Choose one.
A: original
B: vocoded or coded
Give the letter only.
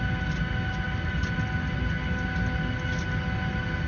A